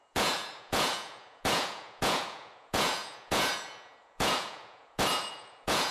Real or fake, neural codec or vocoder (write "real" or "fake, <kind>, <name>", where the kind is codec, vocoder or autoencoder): fake, vocoder, Vocos